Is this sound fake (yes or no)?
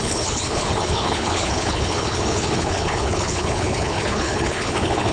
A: yes